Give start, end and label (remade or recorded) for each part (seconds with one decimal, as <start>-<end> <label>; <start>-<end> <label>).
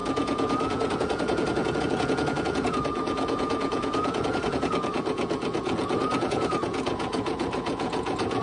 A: 0.0-8.4 remade